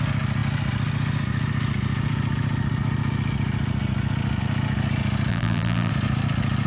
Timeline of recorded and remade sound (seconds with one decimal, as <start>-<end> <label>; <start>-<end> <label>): 0.0-5.3 recorded; 5.3-5.9 remade; 5.9-6.7 recorded

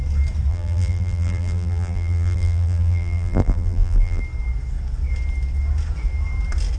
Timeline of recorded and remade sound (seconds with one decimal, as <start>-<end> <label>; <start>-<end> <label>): 0.0-0.5 recorded; 0.5-4.2 remade; 4.2-6.8 recorded

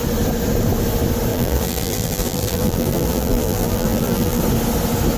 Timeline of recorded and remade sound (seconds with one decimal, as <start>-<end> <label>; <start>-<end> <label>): 0.0-1.3 recorded; 1.3-4.4 remade; 4.4-5.2 recorded

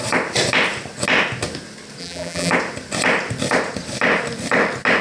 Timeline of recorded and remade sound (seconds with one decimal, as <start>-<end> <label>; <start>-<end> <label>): 0.0-2.0 recorded; 2.0-2.5 remade; 2.5-5.0 recorded